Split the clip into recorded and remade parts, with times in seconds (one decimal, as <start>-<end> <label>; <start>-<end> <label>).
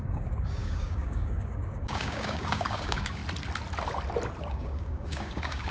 0.0-3.2 remade; 3.2-4.5 recorded; 4.5-5.7 remade